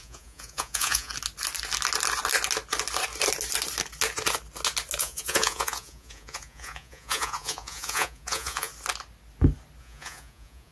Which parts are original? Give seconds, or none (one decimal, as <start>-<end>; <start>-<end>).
1.1-5.0; 8.7-9.8